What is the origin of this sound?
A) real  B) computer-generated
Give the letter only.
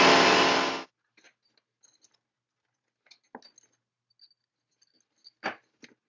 A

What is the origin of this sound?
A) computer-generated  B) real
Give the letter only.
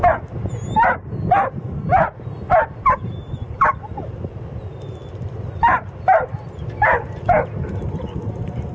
B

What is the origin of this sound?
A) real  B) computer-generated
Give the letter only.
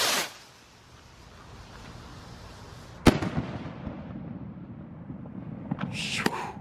A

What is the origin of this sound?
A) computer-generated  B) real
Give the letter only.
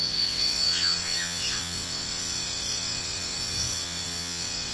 A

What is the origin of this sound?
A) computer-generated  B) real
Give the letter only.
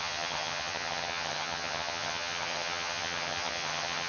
A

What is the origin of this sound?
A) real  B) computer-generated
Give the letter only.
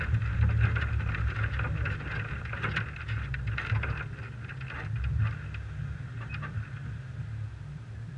A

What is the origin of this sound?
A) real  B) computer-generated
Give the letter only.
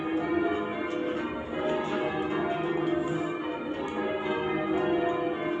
A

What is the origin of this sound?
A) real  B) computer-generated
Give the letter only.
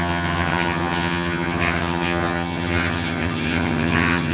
B